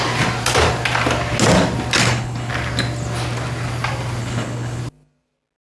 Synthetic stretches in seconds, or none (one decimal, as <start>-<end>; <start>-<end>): 2.0-2.5; 4.2-4.8